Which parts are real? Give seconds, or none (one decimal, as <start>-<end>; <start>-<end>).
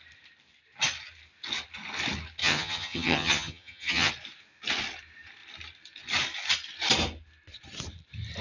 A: 0.0-2.4; 4.1-8.4